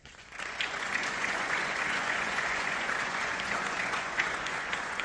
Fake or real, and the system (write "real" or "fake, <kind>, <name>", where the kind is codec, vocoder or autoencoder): fake, vocoder, Vocos